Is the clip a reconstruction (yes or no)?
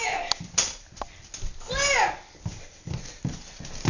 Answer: no